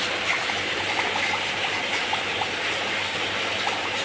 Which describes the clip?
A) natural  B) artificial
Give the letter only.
A